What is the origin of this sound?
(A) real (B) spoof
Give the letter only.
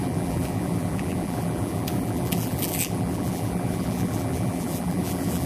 B